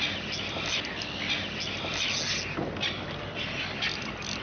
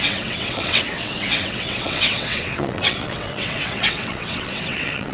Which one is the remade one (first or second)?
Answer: second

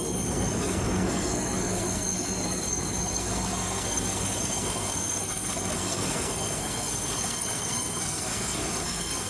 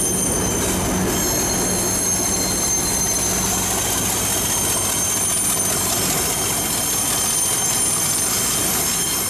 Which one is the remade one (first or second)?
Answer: first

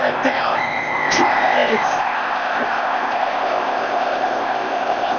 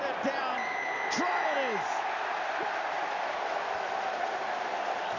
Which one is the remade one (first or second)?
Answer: first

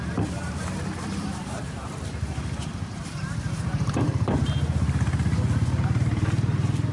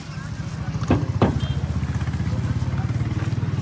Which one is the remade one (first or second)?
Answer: first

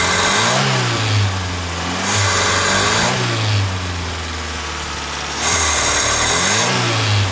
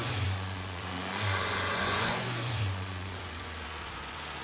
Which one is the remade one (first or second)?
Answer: second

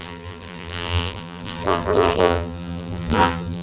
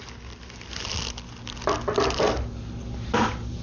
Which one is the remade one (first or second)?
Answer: first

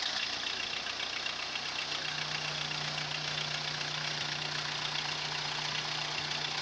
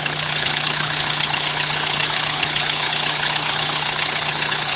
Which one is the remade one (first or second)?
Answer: second